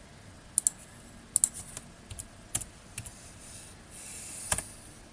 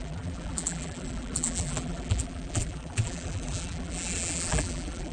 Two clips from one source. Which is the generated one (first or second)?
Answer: second